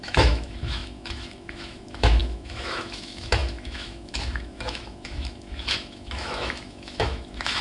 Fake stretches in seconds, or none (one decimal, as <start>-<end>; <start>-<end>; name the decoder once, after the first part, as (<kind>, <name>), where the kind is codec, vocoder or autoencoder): 0.0-7.6 (autoencoder, DAC-VAE)